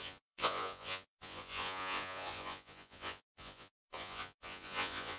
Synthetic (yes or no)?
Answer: yes